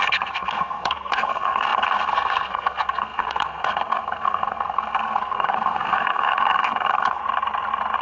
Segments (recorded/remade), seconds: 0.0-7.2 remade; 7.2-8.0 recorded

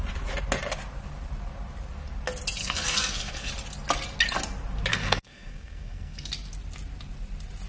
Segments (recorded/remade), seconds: 0.0-2.6 recorded; 2.6-3.5 remade; 3.5-4.9 recorded; 4.9-6.3 remade; 6.3-7.7 recorded

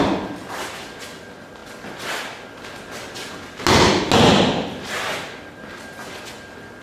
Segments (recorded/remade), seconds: 0.0-6.8 recorded

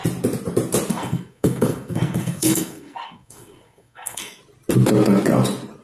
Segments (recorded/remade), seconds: 0.0-0.9 recorded; 0.9-4.4 remade; 4.4-5.8 recorded

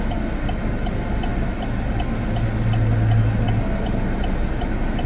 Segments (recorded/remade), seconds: 0.0-5.1 recorded

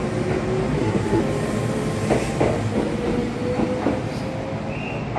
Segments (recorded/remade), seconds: 0.0-0.7 recorded; 0.7-1.2 remade; 1.2-5.2 recorded